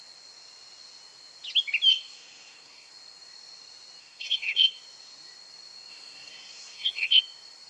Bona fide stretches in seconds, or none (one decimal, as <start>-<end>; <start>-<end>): 0.0-1.9; 2.9-4.0; 4.8-5.9; 7.2-7.7